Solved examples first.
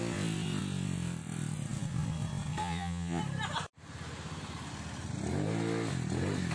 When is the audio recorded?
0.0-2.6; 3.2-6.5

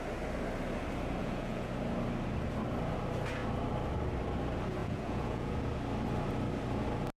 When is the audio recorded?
0.0-1.2; 1.7-4.8; 5.5-7.2

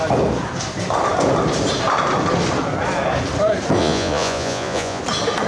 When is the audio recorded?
0.0-3.8; 5.0-5.5